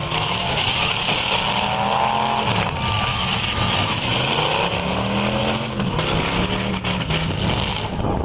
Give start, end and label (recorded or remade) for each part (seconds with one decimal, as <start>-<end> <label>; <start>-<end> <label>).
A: 0.0-1.4 remade; 1.4-3.1 recorded; 3.1-4.3 remade; 4.3-8.2 recorded